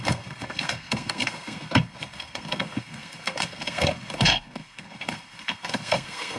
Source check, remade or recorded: remade